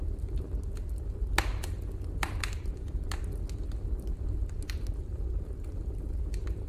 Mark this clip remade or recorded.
recorded